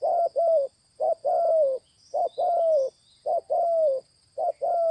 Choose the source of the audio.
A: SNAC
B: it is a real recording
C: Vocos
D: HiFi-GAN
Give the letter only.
B